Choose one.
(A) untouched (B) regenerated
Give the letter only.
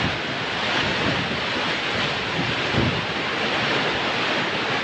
A